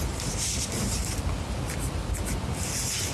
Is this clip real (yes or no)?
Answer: yes